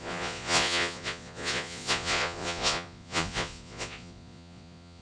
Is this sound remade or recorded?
remade